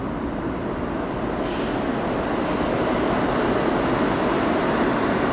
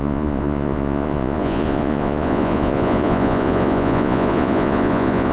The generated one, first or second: second